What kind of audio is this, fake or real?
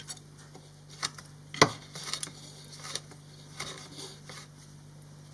real